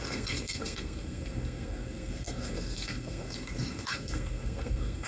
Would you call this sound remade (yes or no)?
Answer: yes